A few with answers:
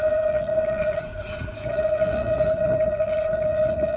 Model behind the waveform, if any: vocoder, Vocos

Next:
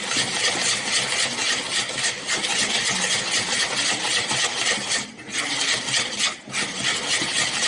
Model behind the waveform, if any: none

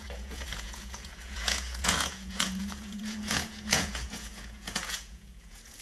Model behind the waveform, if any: vocoder, Vocos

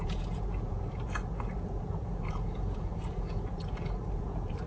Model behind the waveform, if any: vocoder, Vocos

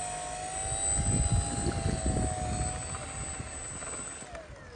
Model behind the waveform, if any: none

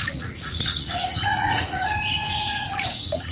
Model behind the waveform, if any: vocoder, Vocos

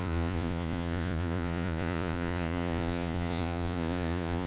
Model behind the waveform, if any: vocoder, Vocos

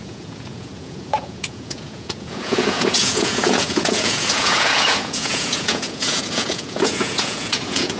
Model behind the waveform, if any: vocoder, Vocos